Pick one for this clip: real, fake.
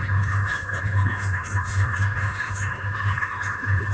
fake